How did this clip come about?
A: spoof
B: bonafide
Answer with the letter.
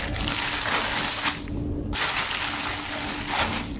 B